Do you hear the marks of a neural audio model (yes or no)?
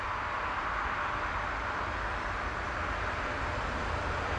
no